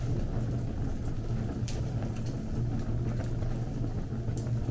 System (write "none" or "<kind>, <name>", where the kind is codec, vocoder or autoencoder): none